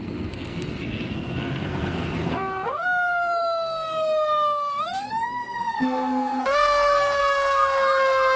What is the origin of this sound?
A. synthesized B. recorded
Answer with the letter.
A